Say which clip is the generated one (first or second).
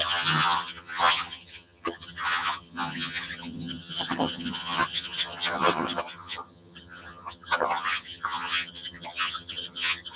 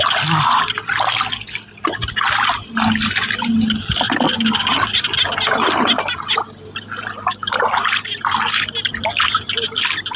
first